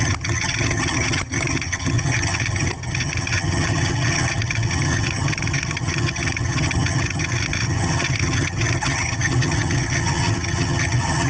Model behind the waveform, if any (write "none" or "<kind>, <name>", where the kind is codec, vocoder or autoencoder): vocoder, HiFi-GAN